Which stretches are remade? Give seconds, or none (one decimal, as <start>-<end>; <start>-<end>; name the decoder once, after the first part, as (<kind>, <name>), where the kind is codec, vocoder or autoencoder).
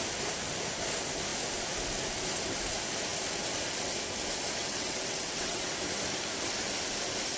4.6-5.7 (vocoder, WaveNeXt)